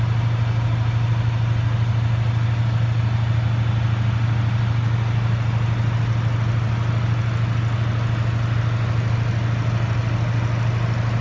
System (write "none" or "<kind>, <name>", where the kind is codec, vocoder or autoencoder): none